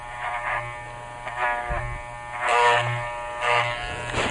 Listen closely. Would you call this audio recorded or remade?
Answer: recorded